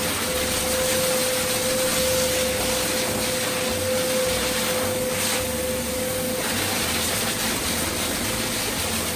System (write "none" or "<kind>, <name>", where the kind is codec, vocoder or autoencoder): none